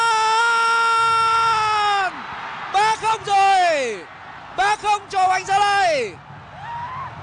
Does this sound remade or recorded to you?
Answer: recorded